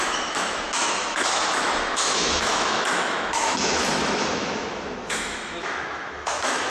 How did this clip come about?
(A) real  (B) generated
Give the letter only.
B